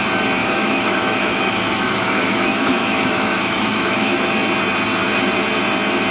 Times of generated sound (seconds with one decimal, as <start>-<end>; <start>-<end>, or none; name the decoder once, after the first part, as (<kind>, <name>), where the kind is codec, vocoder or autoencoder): 0.4-4.1 (autoencoder, DAC-VAE)